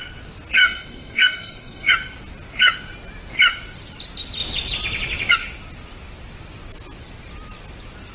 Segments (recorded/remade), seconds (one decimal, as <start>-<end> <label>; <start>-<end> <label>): 0.0-0.6 recorded; 0.6-1.9 remade; 1.9-8.1 recorded